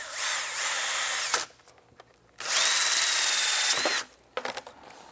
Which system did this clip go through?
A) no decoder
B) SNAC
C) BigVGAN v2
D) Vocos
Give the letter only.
A